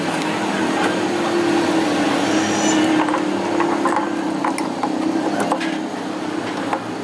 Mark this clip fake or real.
real